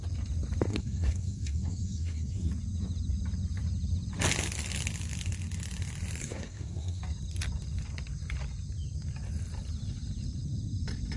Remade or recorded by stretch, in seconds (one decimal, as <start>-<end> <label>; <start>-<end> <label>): 0.0-0.7 recorded; 0.7-2.5 remade; 2.5-6.2 recorded; 6.2-7.0 remade; 7.0-11.2 recorded